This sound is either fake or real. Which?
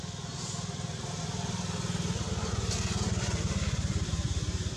real